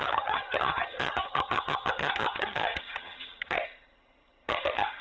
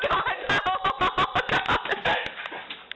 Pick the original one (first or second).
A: second